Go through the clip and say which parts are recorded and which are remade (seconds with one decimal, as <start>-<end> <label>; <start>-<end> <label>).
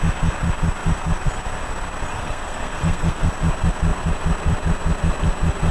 0.0-2.1 recorded; 2.1-3.3 remade; 3.3-5.7 recorded